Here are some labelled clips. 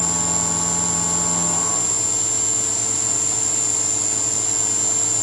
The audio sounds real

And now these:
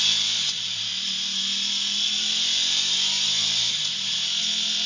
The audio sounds real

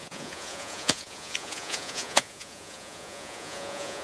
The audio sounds fake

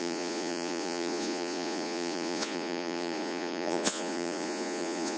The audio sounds fake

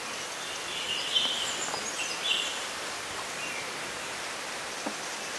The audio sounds real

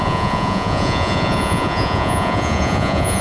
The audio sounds fake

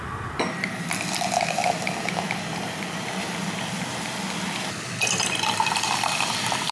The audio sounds real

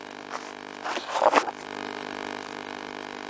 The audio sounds real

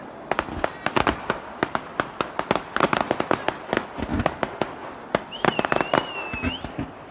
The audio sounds real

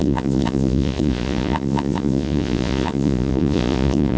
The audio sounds fake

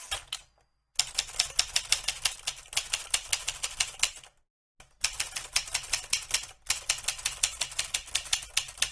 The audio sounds real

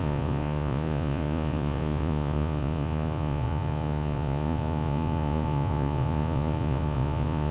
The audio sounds fake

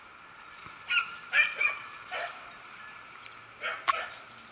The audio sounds real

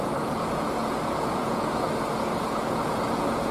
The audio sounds fake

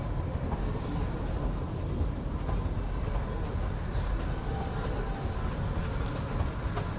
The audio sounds real